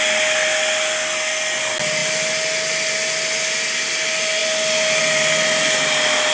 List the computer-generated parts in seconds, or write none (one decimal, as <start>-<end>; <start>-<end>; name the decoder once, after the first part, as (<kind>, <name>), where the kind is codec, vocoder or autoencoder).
none

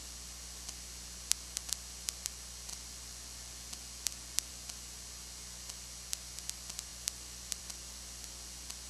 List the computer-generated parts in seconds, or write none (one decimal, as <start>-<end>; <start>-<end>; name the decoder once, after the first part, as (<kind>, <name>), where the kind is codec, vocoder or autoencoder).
none

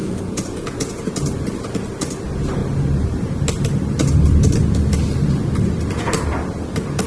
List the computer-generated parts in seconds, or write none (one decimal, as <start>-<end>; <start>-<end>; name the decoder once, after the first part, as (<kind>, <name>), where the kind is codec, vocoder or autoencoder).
0.0-1.1 (vocoder, Vocos)

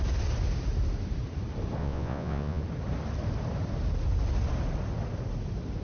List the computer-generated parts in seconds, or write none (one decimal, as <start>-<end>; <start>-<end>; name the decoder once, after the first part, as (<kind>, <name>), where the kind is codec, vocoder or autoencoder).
1.8-2.6 (vocoder, Vocos)

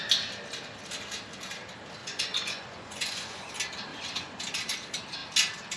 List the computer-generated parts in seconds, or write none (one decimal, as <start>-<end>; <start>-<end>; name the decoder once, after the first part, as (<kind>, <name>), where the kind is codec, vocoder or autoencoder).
2.0-3.5 (vocoder, Vocos); 3.9-4.4

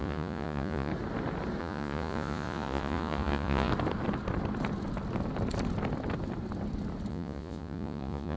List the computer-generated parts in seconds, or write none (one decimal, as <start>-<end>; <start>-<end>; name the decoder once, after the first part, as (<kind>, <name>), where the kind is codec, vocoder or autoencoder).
0.0-0.9 (vocoder, Vocos); 1.6-3.7; 7.1-8.4

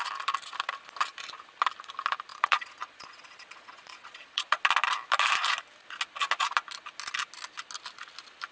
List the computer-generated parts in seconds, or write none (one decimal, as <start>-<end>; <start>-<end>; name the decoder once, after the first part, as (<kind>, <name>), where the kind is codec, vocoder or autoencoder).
2.3-4.6 (vocoder, Vocos)